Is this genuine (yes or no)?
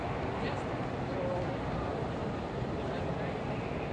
yes